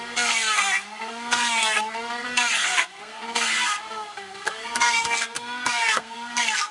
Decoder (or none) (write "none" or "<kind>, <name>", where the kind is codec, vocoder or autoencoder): codec, SNAC